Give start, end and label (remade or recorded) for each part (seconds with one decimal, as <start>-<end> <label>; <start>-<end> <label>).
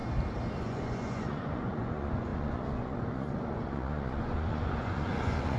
0.0-0.6 recorded; 0.6-5.6 remade